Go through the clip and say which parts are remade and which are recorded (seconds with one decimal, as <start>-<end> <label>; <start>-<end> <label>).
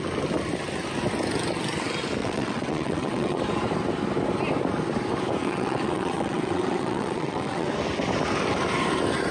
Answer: 0.0-2.2 recorded; 2.2-3.4 remade; 3.4-5.4 recorded; 5.4-7.7 remade; 7.7-9.3 recorded